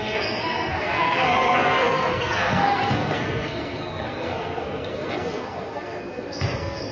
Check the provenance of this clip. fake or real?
fake